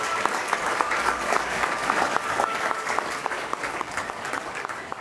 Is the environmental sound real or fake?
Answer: fake